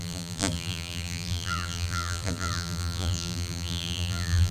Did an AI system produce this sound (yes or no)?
yes